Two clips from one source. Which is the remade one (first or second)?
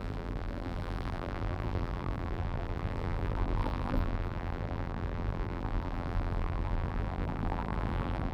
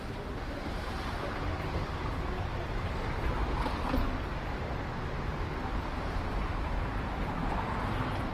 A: first